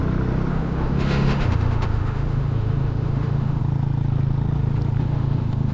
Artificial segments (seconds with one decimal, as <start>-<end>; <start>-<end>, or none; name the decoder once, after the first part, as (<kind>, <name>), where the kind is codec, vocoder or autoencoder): 0.5-3.6 (autoencoder, DAC-VAE); 5.0-5.7